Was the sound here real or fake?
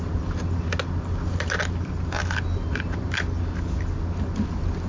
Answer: real